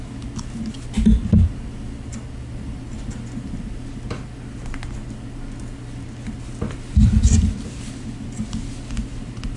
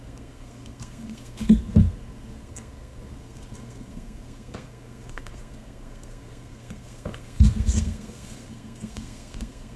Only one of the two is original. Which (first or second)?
first